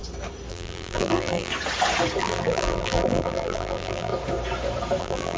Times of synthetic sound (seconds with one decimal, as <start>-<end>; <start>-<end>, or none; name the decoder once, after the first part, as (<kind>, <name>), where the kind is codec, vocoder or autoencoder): 0.5-1.5 (vocoder, BigVGAN v2); 2.2-4.1; 5.0-5.4